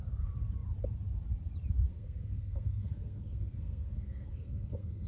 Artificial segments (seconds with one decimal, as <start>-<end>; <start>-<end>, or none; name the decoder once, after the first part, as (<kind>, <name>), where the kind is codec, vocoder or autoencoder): 1.9-5.1 (codec, SNAC)